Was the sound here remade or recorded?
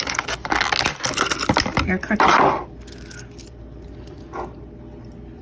recorded